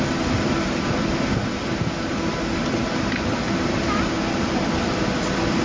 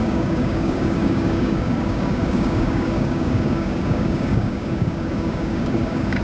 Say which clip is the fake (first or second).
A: second